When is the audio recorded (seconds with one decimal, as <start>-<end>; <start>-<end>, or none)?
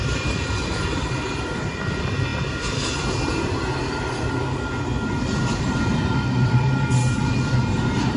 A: none